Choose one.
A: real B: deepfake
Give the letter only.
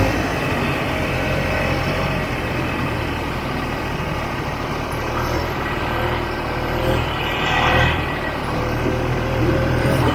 B